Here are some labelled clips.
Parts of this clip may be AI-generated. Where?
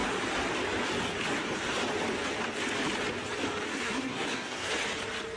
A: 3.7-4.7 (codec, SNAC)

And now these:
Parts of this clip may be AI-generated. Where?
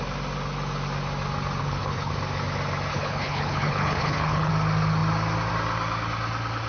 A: 1.6-2.1 (codec, HILCodec); 2.9-4.5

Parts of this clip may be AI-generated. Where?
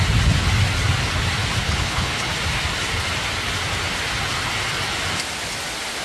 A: 1.6-2.3 (codec, HILCodec)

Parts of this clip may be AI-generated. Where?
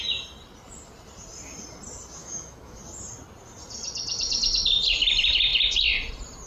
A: 2.2-2.8 (autoencoder, DAC-VAE)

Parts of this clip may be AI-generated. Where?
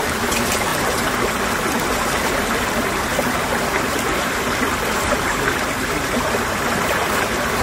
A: none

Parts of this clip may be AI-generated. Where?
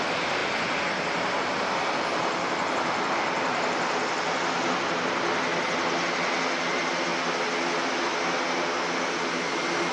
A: none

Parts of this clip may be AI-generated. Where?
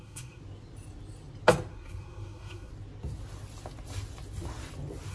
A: 0.0-0.4 (codec, SNAC); 1.7-2.7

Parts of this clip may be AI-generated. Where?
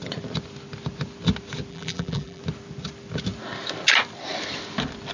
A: 1.7-2.4 (vocoder, BigVGAN v2)